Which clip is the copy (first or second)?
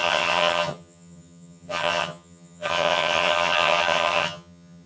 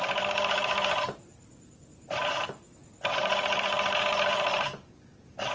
first